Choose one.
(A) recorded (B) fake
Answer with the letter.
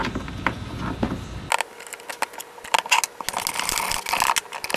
A